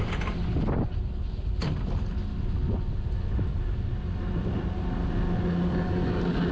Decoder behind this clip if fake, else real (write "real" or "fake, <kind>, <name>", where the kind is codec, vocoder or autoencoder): real